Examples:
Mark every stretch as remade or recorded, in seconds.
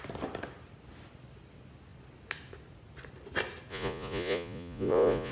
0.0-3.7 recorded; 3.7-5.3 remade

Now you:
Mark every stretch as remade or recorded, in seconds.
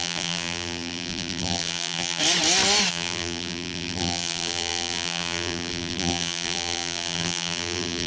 0.0-2.2 remade; 2.2-2.9 recorded; 2.9-8.1 remade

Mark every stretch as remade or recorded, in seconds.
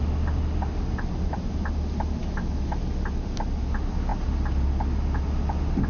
0.0-2.2 recorded; 2.2-2.8 remade; 2.8-5.9 recorded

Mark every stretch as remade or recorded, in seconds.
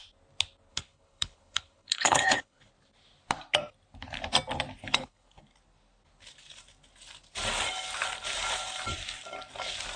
0.0-0.7 recorded; 0.7-2.7 remade; 2.7-4.8 recorded; 4.8-5.4 remade; 5.4-10.0 recorded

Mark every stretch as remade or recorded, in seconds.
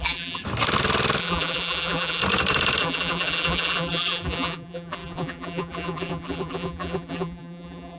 0.0-0.4 remade; 0.4-1.2 recorded; 1.2-2.2 remade; 2.2-2.8 recorded; 2.8-8.0 remade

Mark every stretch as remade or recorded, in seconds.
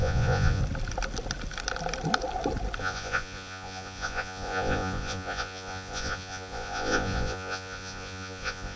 0.0-0.6 remade; 0.6-2.8 recorded; 2.8-8.8 remade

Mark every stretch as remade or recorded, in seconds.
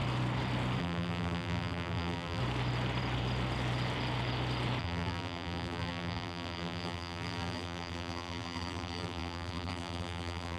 0.0-0.8 recorded; 0.8-2.4 remade; 2.4-4.8 recorded; 4.8-10.6 remade